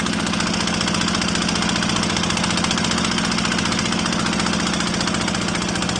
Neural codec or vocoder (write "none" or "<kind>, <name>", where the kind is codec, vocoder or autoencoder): none